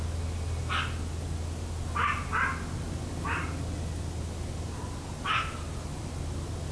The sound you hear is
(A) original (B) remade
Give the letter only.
A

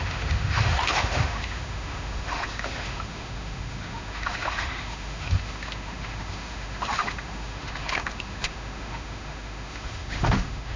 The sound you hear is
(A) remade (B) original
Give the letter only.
A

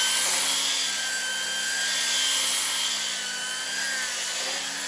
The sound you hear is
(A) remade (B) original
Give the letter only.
B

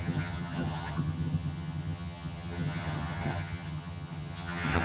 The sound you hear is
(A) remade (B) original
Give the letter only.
A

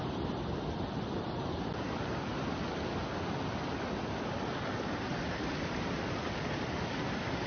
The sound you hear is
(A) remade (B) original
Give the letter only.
B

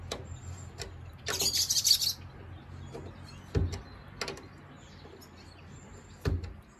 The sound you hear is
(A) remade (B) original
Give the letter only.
B